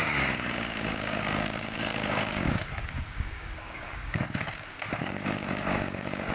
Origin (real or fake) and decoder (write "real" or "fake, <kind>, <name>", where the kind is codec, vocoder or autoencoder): fake, codec, DAC